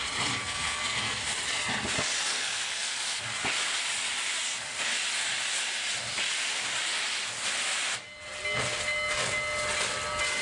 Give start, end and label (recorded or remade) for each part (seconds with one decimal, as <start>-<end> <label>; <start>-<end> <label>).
0.0-0.4 recorded; 0.4-1.2 remade; 1.2-2.3 recorded; 2.3-3.2 remade; 3.2-10.4 recorded